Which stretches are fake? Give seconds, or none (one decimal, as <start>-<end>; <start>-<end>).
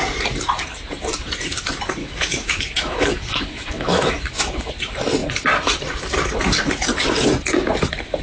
2.0-4.7